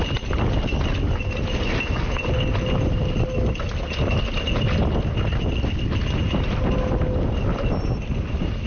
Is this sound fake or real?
real